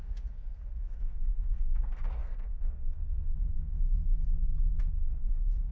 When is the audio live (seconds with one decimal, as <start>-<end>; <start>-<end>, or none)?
3.9-4.8